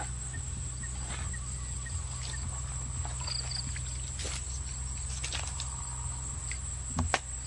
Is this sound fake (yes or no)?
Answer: no